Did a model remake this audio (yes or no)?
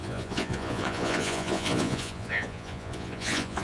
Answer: yes